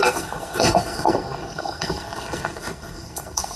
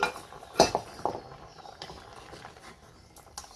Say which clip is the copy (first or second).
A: first